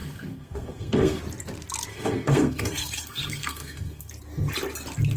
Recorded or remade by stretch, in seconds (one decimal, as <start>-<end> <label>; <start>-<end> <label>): 0.0-1.2 remade; 1.2-1.9 recorded; 1.9-4.1 remade; 4.1-5.2 recorded